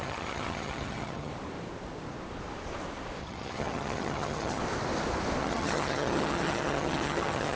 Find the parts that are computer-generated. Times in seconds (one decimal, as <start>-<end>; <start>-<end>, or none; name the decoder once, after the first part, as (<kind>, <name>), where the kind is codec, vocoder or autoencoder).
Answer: 0.0-1.3 (vocoder, HiFi-GAN); 3.2-4.6; 5.4-7.6

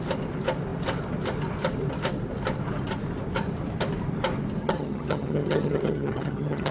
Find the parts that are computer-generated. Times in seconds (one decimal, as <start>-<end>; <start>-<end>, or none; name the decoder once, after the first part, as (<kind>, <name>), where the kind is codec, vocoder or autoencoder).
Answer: 4.6-6.7 (vocoder, HiFi-GAN)

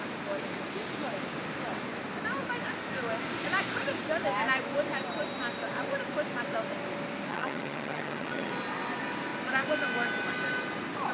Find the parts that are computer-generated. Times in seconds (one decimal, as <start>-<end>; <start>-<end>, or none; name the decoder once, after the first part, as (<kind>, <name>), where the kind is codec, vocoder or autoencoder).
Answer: 7.3-8.5 (vocoder, HiFi-GAN)

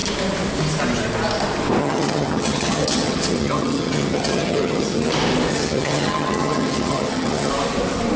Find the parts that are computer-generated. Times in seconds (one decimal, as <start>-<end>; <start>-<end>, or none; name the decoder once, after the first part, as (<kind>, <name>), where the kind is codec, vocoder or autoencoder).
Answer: 1.8-5.1 (vocoder, HiFi-GAN); 5.5-7.5

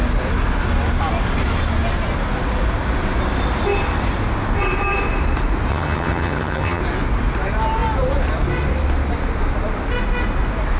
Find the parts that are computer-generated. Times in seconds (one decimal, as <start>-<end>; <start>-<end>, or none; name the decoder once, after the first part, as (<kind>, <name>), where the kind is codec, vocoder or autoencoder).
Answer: 5.7-6.8 (vocoder, HiFi-GAN)

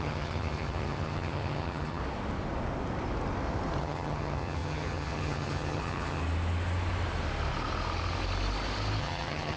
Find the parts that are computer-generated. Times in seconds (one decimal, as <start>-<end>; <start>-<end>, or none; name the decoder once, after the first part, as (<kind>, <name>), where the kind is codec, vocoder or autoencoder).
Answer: 0.0-2.0 (vocoder, HiFi-GAN); 3.8-6.2; 9.0-9.6

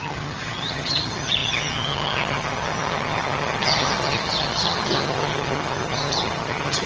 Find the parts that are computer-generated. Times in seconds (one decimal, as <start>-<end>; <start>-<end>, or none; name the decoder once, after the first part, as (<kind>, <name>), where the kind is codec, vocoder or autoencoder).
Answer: 0.0-6.9 (vocoder, HiFi-GAN)

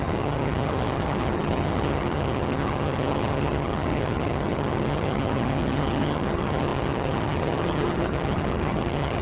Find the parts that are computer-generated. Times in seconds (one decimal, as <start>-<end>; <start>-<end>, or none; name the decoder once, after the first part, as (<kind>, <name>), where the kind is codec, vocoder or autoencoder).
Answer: 0.0-9.2 (vocoder, HiFi-GAN)